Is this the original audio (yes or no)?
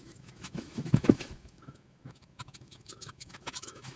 no